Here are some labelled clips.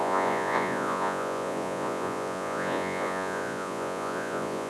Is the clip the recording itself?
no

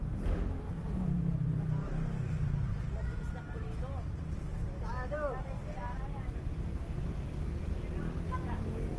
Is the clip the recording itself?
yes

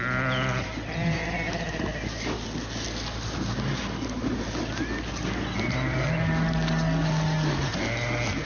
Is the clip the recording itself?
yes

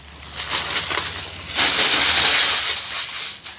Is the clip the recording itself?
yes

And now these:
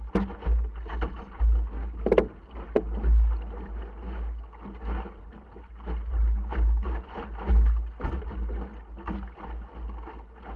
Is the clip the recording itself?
yes